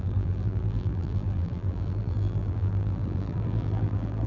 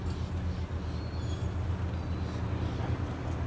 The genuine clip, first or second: second